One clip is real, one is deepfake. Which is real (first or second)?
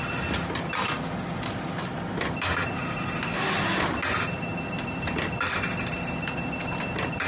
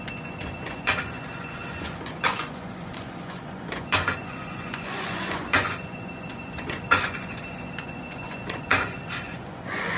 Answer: first